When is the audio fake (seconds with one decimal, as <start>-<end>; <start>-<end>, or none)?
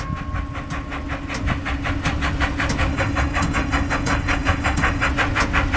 2.9-5.1